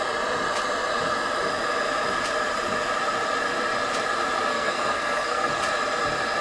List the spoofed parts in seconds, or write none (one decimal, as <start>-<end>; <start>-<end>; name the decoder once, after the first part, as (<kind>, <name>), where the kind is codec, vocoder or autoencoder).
4.5-5.5 (codec, SNAC)

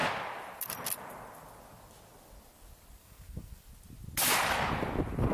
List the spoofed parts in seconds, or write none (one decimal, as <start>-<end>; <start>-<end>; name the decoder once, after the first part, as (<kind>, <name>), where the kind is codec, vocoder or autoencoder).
3.0-3.6 (codec, SNAC)

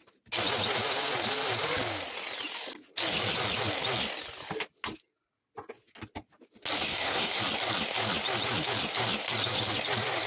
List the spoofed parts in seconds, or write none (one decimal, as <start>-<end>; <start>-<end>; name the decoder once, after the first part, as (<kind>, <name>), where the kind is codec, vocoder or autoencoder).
6.9-7.4 (codec, SNAC)

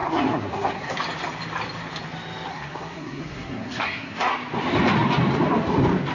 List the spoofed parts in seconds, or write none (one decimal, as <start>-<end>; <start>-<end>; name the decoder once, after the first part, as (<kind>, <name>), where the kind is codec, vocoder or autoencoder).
0.0-1.0 (codec, SNAC); 2.5-4.3

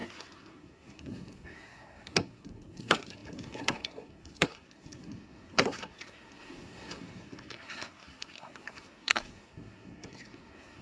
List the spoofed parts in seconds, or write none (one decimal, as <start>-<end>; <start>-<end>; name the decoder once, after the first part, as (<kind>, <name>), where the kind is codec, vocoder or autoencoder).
0.0-10.8 (codec, SNAC)

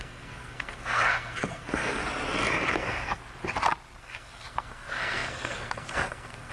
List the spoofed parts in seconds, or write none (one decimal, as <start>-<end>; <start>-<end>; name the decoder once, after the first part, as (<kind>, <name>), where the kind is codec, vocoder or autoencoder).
0.0-2.0 (codec, SNAC); 2.7-3.2; 4.0-6.5

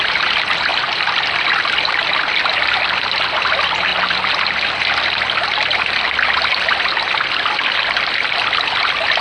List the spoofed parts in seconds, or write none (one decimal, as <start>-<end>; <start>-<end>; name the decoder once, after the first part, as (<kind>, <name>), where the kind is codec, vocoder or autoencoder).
none